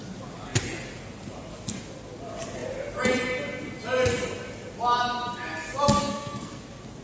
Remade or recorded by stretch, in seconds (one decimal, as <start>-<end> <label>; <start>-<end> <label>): 0.0-6.0 recorded; 6.0-6.6 remade; 6.6-7.0 recorded